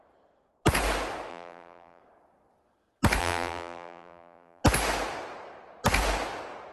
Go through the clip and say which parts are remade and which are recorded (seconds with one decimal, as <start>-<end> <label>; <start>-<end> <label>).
0.0-1.3 recorded; 1.3-2.0 remade; 2.0-3.2 recorded; 3.2-4.6 remade; 4.6-6.7 recorded